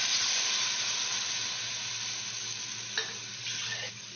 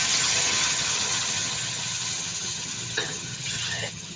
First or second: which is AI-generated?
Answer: second